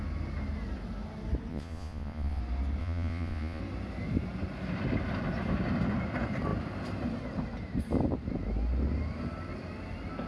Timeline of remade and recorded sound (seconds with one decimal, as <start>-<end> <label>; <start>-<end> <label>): 0.0-1.5 recorded; 1.5-2.4 remade; 2.4-2.8 recorded; 2.8-3.6 remade; 3.6-10.3 recorded

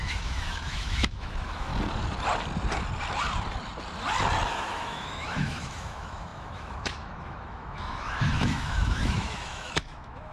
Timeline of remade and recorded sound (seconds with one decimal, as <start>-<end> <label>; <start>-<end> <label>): 0.0-1.7 remade; 1.7-4.5 recorded; 4.5-10.3 remade

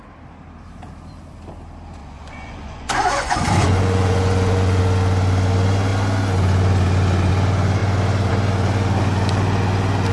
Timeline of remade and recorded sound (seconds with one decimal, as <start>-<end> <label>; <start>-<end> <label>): 0.0-2.0 recorded; 2.0-4.8 remade; 4.8-10.1 recorded

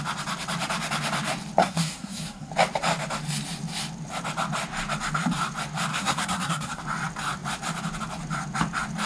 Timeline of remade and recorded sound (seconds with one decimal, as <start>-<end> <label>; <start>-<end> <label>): 0.0-1.6 recorded; 1.6-2.5 remade; 2.5-5.9 recorded; 5.9-6.8 remade; 6.8-9.1 recorded

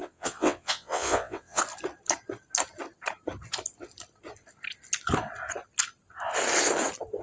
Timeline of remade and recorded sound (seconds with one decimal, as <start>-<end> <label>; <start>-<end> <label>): 0.0-1.6 remade; 1.6-7.2 recorded

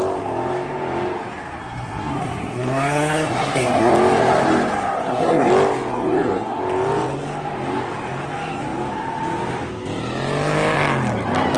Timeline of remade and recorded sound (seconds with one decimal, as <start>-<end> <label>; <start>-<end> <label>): 0.0-1.6 recorded; 1.6-3.9 remade; 3.9-5.0 recorded; 5.0-5.5 remade; 5.5-5.9 recorded; 5.9-6.6 remade; 6.6-11.6 recorded

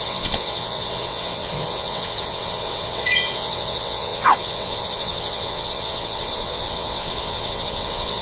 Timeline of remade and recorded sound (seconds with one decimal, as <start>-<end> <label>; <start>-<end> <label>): 0.0-8.2 remade